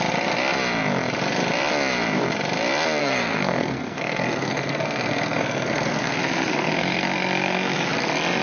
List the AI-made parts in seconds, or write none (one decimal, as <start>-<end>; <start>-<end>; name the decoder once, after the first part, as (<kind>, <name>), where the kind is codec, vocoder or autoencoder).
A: 3.0-7.9 (codec, SNAC)